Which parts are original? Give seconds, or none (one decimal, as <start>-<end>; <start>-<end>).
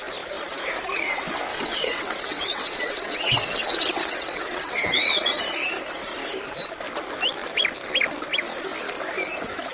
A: 0.0-1.5; 5.4-9.7